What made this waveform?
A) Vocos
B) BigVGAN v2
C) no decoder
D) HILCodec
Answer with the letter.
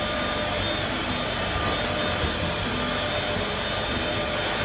C